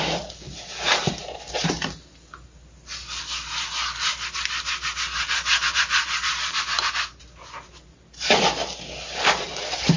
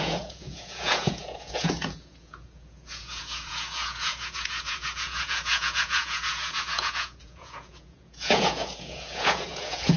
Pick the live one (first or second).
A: first